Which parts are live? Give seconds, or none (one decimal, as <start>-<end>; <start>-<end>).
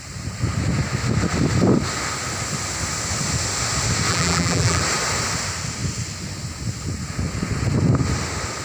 0.0-4.1; 4.8-8.6